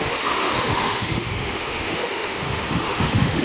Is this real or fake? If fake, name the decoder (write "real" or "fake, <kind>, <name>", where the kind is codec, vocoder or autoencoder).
fake, autoencoder, DAC-VAE